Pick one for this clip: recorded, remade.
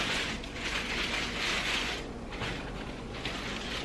remade